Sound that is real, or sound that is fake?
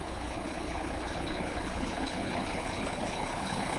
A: fake